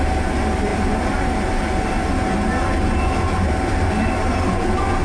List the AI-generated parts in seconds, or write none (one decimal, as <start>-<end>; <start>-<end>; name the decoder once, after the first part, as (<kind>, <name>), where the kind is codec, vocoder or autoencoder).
none

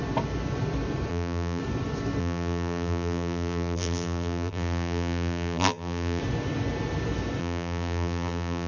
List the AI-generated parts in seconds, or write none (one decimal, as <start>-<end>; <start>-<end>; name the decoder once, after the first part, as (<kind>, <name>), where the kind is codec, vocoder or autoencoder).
1.1-1.6 (vocoder, BigVGAN v2); 2.2-6.2; 7.4-8.7

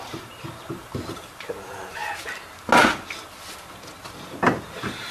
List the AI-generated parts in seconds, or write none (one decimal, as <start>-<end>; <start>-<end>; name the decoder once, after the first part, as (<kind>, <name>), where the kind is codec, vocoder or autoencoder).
0.0-2.0 (vocoder, BigVGAN v2); 4.6-5.1

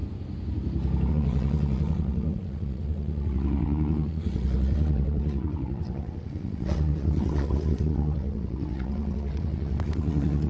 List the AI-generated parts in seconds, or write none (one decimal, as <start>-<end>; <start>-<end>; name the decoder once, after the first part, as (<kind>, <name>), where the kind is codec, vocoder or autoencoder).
1.1-10.5 (vocoder, WaveNeXt)

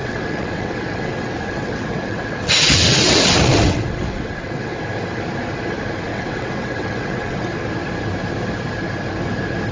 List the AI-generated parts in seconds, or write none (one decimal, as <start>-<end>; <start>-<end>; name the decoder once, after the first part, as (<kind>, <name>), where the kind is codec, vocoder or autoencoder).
0.0-4.8 (vocoder, WaveNeXt); 6.1-7.5

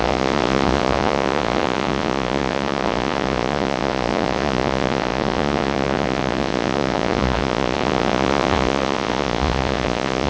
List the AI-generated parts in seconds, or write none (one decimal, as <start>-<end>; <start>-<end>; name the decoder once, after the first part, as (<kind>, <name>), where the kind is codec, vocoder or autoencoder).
0.0-10.3 (vocoder, Vocos)